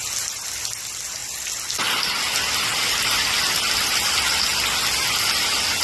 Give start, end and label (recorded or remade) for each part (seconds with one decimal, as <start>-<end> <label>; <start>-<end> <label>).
0.0-5.8 recorded